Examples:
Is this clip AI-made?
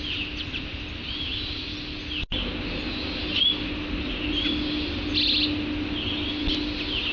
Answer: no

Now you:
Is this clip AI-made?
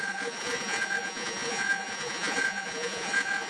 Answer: yes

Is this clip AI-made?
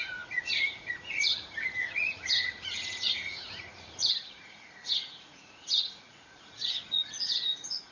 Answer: yes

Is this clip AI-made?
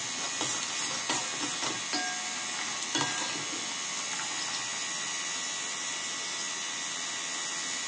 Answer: no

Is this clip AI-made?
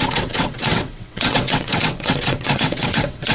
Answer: yes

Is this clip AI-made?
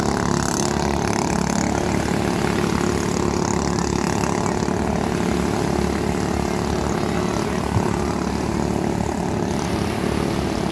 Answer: no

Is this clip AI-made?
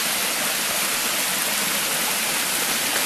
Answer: no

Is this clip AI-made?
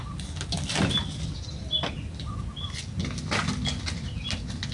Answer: no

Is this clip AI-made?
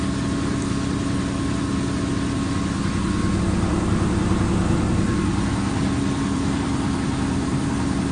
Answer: no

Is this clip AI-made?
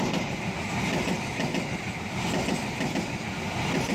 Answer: no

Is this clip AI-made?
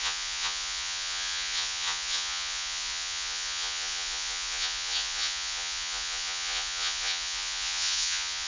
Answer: yes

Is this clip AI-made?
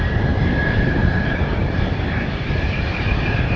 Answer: yes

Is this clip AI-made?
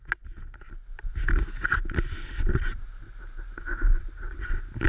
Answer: no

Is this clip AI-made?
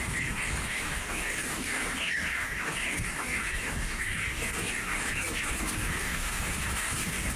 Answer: yes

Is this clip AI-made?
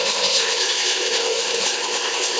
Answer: yes